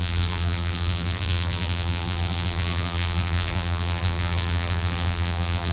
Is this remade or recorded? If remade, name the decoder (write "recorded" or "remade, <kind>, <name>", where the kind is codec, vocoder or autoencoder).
remade, vocoder, BigVGAN v2